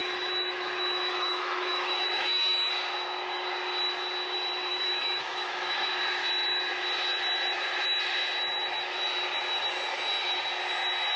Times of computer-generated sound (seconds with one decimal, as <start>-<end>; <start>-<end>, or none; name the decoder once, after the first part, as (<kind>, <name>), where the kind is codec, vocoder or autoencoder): 0.0-2.7 (autoencoder, DAC-VAE); 4.7-5.9